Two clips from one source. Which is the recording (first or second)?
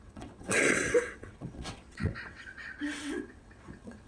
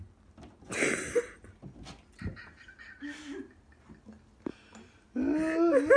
second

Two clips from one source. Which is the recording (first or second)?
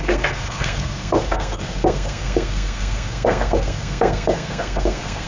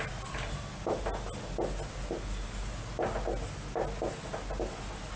second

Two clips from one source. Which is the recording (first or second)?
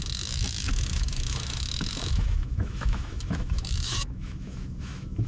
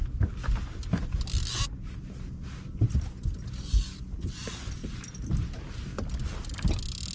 second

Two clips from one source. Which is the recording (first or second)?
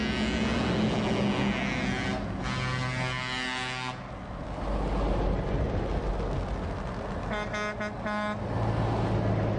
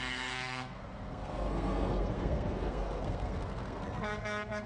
first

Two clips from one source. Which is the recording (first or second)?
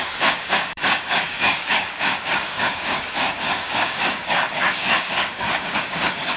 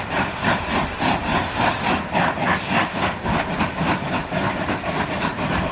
second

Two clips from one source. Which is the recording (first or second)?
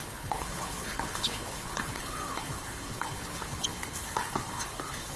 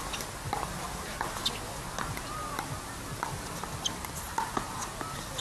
second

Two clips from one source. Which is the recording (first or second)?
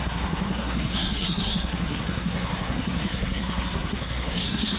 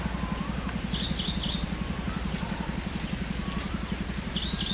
second